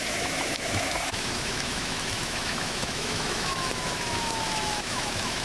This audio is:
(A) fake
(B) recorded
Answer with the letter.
A